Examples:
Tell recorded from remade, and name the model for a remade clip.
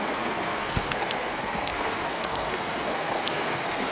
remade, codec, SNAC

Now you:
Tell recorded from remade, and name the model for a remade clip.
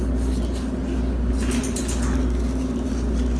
recorded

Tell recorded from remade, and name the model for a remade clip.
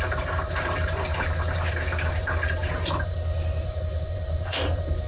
remade, vocoder, BigVGAN v2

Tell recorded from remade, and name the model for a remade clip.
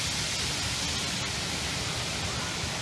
recorded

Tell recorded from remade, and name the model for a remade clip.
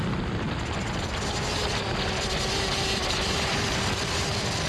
recorded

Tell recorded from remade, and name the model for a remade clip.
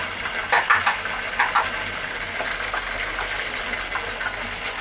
recorded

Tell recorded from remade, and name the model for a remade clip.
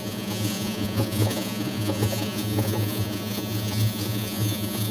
remade, vocoder, Vocos